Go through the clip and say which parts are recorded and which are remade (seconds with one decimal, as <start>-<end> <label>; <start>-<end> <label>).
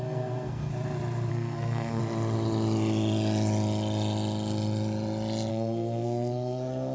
0.0-0.7 remade; 0.7-1.3 recorded; 1.3-2.0 remade; 2.0-5.5 recorded; 5.5-6.9 remade